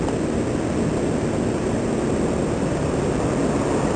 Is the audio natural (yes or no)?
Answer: yes